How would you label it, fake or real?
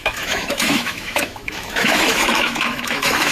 fake